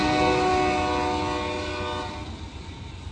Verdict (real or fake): real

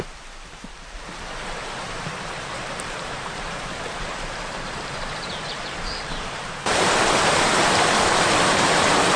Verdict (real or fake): fake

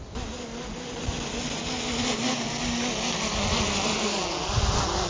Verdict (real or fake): real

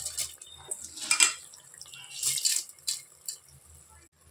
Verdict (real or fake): real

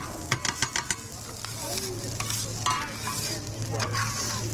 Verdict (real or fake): real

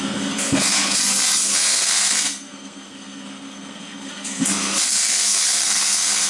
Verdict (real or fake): fake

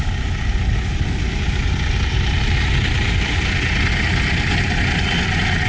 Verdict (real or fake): real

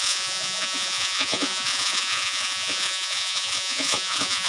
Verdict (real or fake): fake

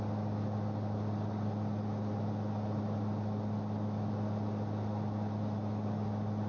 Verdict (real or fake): real